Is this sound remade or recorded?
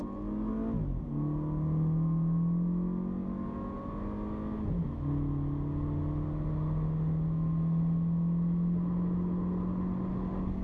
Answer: recorded